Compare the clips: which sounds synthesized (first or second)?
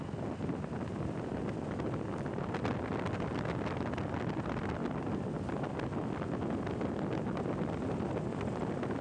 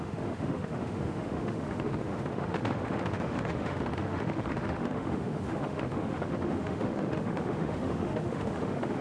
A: second